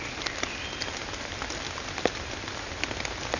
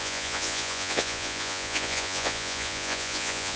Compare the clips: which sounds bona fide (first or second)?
first